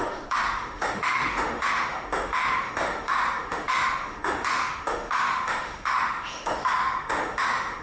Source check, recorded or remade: remade